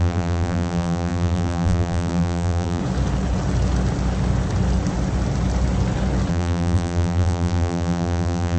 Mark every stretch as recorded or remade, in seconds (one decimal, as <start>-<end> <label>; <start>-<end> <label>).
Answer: 0.0-2.8 remade; 2.8-6.3 recorded; 6.3-8.6 remade